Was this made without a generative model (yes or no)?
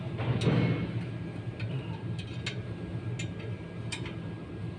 yes